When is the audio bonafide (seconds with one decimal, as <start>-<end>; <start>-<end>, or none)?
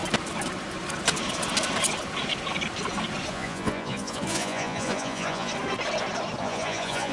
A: 0.0-3.3; 5.5-6.4